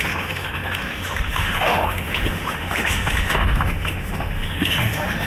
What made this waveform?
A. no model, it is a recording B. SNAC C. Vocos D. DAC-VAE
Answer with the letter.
D